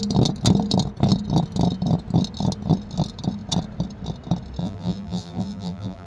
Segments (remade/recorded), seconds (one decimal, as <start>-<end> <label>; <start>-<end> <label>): 0.0-4.6 recorded; 4.6-6.1 remade